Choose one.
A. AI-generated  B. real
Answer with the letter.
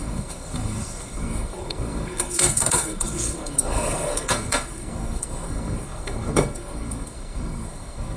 A